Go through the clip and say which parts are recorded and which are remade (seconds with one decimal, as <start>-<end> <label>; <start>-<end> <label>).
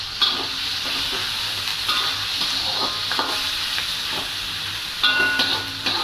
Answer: 0.0-6.0 recorded